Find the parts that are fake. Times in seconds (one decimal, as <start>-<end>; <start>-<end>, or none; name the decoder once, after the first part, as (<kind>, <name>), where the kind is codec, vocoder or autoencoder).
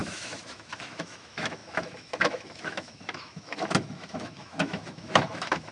0.0-5.7 (autoencoder, DAC-VAE)